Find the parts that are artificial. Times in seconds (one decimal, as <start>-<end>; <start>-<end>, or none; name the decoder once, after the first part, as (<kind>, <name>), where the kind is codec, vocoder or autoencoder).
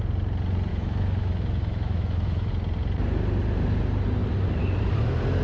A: 0.7-2.5 (autoencoder, DAC-VAE)